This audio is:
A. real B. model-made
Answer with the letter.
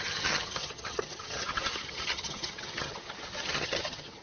B